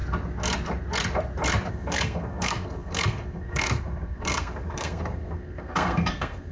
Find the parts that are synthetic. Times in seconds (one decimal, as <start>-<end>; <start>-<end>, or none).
1.7-6.5